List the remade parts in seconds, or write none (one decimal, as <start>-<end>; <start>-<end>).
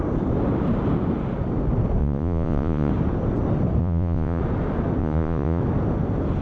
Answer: 2.0-2.9; 3.8-4.4; 5.0-5.6